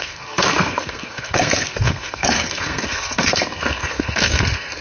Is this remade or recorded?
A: remade